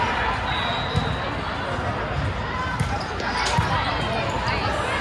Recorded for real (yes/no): yes